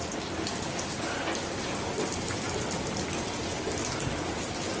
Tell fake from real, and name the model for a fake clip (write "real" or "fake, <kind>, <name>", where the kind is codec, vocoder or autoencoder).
real